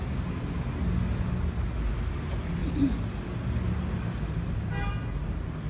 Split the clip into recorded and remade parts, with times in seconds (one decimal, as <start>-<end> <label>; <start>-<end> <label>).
0.0-5.7 recorded